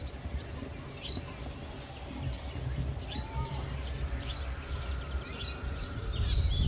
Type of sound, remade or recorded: recorded